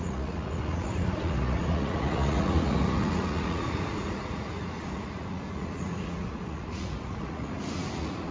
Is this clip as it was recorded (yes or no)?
no